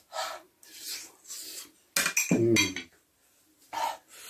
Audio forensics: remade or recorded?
recorded